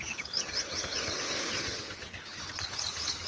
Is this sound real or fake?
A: fake